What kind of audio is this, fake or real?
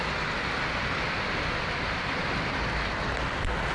real